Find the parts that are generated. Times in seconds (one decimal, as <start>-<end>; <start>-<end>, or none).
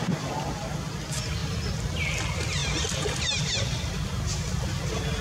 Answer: none